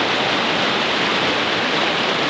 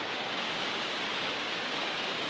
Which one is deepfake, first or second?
second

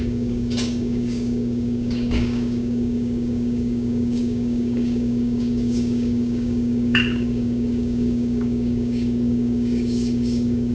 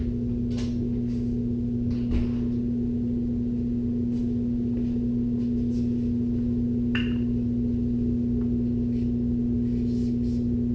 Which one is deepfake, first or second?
first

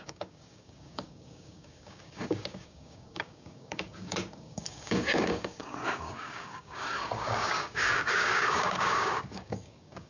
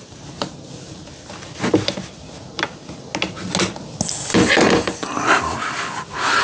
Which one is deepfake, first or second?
first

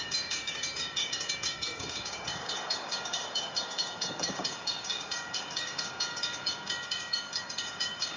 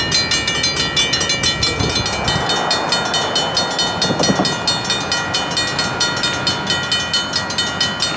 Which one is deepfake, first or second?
first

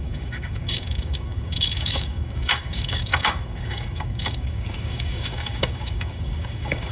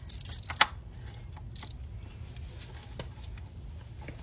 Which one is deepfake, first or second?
first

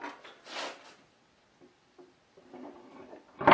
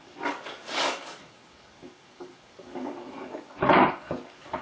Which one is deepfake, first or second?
second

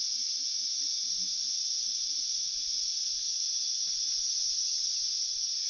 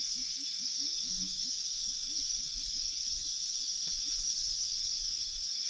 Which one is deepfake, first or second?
second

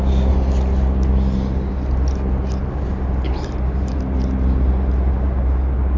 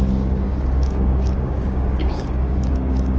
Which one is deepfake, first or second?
second